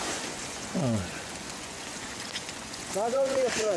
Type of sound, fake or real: fake